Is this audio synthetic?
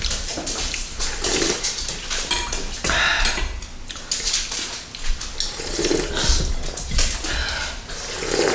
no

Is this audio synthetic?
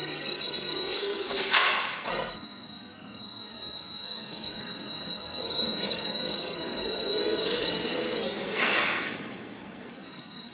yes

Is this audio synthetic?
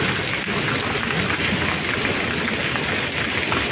no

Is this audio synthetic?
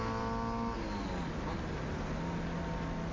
no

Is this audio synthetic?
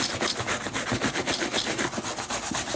no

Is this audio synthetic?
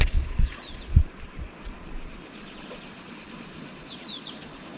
yes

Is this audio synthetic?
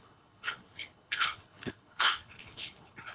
yes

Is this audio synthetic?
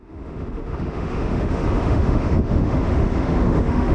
yes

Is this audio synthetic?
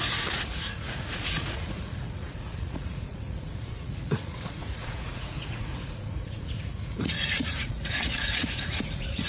yes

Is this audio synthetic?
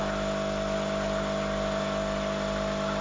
no